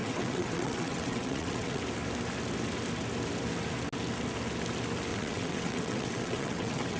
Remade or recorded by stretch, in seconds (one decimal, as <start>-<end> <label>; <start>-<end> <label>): 0.0-1.8 remade; 1.8-5.1 recorded; 5.1-7.0 remade

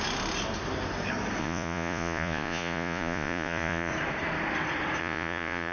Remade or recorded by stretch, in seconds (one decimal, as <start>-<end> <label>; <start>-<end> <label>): 0.0-1.4 recorded; 1.4-3.9 remade; 3.9-5.0 recorded; 5.0-5.7 remade

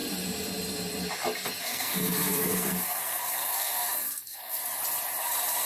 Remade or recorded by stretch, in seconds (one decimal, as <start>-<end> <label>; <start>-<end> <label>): 0.0-1.6 recorded; 1.6-4.6 remade; 4.6-5.6 recorded

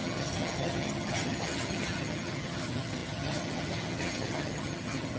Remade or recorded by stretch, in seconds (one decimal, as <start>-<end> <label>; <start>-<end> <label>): 0.0-5.2 remade

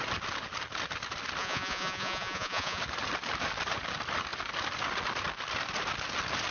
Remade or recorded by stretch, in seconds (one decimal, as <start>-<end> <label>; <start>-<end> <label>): 0.0-1.4 recorded; 1.4-2.8 remade; 2.8-6.5 recorded

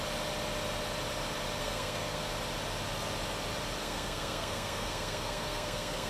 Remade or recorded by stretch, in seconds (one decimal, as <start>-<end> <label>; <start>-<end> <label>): 0.0-1.6 recorded; 1.6-2.2 remade; 2.2-3.8 recorded; 3.8-6.1 remade